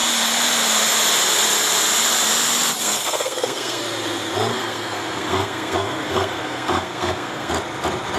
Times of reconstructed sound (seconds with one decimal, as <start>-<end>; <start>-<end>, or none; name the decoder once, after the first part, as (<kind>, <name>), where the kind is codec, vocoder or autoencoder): 2.8-3.8 (codec, SNAC); 4.5-7.5

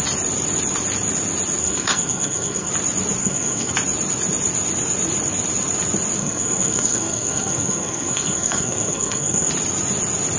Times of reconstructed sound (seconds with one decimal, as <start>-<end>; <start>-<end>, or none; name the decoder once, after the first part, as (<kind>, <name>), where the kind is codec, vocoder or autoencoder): 1.6-2.7 (codec, SNAC); 3.2-3.7; 6.2-9.5

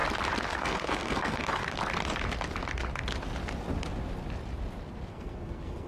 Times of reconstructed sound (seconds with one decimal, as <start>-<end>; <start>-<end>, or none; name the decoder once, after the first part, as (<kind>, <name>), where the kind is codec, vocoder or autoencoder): 0.5-1.6 (codec, SNAC); 5.1-5.9

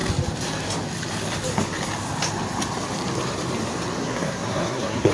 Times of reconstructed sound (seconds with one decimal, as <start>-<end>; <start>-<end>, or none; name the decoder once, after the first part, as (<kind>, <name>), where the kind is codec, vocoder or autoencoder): 4.0-5.1 (codec, SNAC)

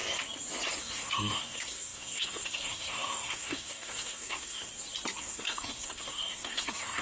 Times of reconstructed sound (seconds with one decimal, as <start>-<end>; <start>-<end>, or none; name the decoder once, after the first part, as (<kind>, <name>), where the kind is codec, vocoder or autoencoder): 0.8-4.7 (codec, SNAC); 5.2-7.0